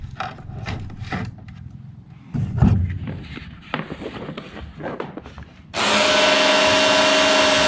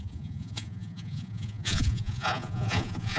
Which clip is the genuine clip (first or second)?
first